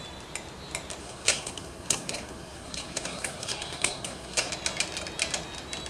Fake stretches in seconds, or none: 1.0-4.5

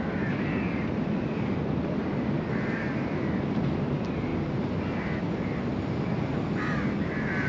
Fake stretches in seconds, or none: none

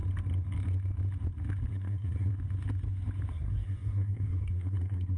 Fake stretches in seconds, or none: 1.7-2.3; 3.3-5.2

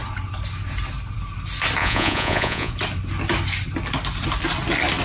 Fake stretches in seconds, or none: 1.8-2.7

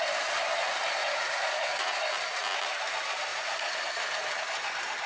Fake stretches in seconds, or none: 1.0-2.0; 3.3-3.8

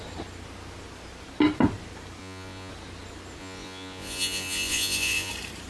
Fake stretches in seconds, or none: 2.2-2.7; 3.4-5.3